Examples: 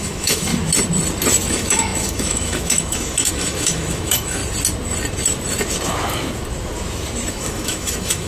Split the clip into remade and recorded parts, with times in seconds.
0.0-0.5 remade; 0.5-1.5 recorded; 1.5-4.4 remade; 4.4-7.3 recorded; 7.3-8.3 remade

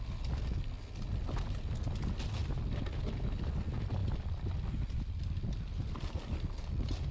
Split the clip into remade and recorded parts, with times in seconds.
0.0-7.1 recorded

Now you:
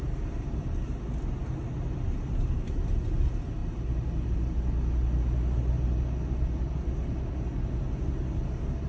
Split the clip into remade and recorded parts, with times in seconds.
0.0-8.9 recorded

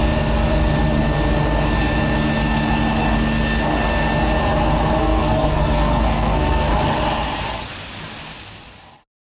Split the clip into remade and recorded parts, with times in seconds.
0.0-5.0 recorded; 5.0-6.7 remade; 6.7-9.3 recorded